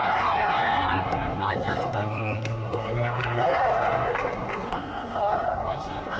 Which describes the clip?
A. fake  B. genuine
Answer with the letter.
A